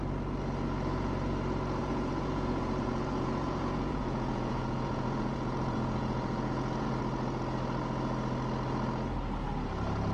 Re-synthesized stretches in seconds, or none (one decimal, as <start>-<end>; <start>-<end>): 1.8-7.0